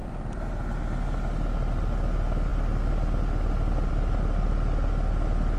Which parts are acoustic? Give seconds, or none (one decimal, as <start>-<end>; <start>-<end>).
0.5-5.6